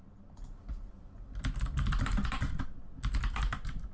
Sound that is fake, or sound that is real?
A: real